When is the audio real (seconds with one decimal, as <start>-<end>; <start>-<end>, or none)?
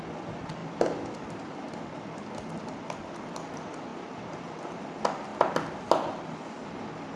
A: 0.0-0.6; 3.5-3.9; 4.4-7.2